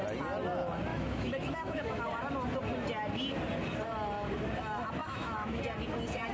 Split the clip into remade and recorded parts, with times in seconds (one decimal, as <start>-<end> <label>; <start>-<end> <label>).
0.0-0.9 recorded; 0.9-2.0 remade; 2.0-5.0 recorded; 5.0-5.6 remade; 5.6-6.3 recorded